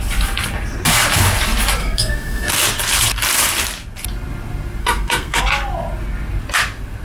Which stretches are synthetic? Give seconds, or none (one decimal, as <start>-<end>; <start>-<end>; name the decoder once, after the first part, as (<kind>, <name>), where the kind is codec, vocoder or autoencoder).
1.8-2.5 (codec, SNAC); 4.8-5.4

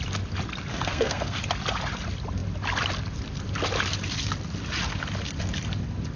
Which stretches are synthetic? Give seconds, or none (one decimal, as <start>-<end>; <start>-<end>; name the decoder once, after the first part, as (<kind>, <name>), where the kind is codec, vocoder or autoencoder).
0.7-1.4 (codec, SNAC)

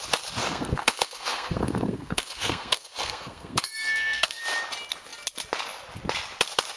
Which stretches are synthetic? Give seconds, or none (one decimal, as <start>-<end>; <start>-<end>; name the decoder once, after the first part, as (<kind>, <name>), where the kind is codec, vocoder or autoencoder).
0.4-4.4 (codec, SNAC)

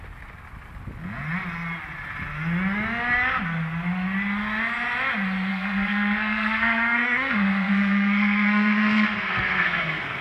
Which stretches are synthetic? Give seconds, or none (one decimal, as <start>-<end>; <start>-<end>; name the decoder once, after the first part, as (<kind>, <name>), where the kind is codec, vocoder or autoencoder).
5.5-10.2 (codec, SNAC)

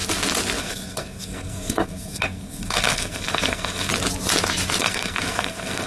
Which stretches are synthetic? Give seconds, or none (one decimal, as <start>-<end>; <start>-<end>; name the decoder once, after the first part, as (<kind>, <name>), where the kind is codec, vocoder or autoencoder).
0.6-3.9 (codec, SNAC); 4.8-5.9

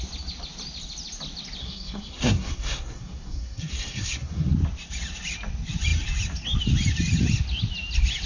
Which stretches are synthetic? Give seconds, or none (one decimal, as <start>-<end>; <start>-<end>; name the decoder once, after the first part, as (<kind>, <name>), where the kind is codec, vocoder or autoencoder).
1.6-4.5 (codec, SNAC)